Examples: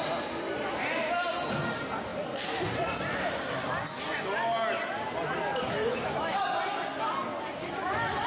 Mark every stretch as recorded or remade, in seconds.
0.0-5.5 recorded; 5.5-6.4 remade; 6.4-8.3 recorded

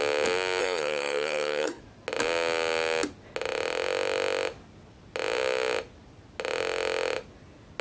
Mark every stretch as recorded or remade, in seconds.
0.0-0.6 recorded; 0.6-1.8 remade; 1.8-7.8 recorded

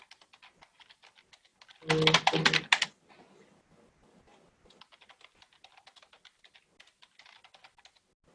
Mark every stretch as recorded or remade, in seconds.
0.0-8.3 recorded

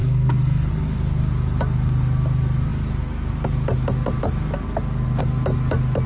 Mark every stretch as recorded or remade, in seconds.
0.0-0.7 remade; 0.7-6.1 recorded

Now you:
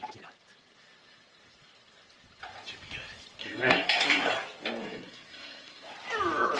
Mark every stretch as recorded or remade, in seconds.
0.0-3.4 recorded; 3.4-4.3 remade; 4.3-4.8 recorded; 4.8-5.9 remade; 5.9-6.6 recorded

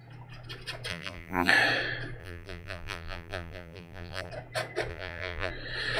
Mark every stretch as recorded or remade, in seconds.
0.0-0.9 recorded; 0.9-1.5 remade; 1.5-2.2 recorded; 2.2-4.3 remade; 4.3-4.9 recorded; 4.9-5.5 remade; 5.5-6.0 recorded

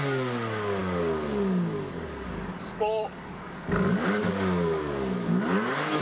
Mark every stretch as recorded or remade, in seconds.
0.0-6.0 remade